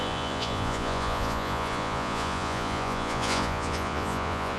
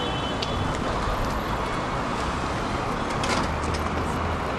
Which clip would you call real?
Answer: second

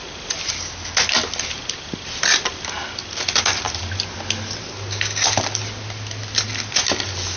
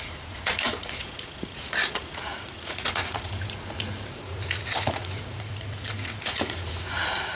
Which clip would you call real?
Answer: first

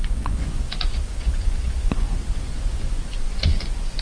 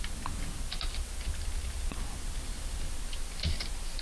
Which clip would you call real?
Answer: second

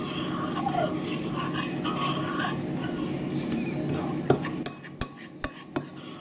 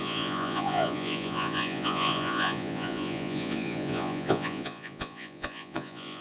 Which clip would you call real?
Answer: first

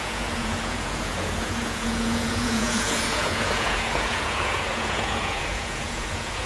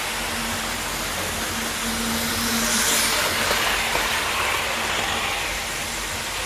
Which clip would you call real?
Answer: second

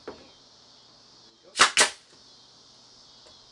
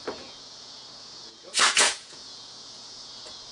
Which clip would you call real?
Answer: first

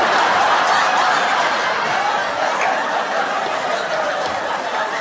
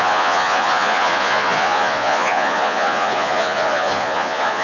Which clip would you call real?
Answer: first